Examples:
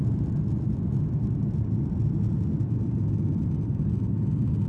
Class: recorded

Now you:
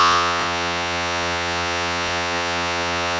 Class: remade